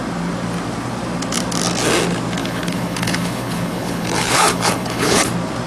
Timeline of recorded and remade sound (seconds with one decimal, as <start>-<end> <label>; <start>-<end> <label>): 0.0-2.4 recorded; 2.4-5.3 remade; 5.3-5.7 recorded